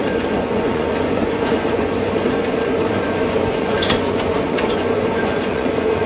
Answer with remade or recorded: remade